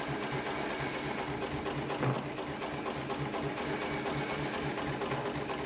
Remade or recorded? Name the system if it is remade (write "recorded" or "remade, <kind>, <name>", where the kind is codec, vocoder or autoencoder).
recorded